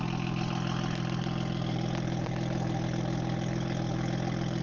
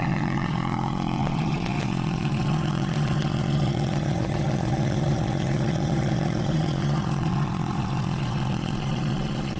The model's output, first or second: second